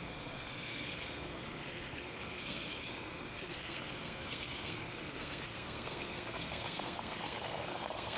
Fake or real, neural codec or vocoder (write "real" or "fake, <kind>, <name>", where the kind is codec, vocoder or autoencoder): fake, codec, SNAC